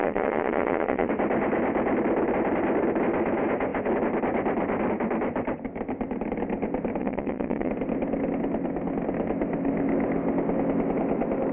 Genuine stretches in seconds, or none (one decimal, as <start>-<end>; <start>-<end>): 1.1-7.0; 7.7-11.5